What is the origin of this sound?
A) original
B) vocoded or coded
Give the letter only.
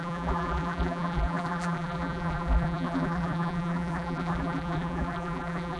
B